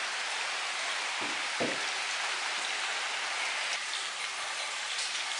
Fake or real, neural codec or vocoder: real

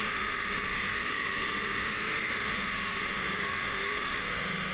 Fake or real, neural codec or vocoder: fake, autoencoder, DAC-VAE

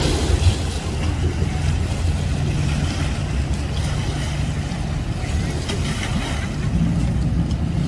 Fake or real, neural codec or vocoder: real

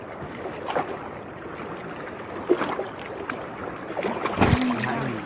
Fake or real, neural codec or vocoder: real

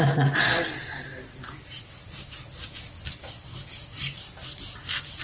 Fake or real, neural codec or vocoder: real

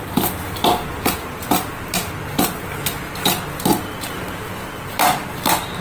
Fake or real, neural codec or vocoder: real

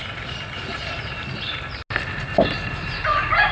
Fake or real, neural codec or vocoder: real